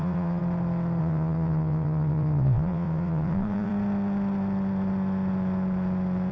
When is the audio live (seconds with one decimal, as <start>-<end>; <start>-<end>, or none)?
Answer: 0.4-1.0; 3.7-6.3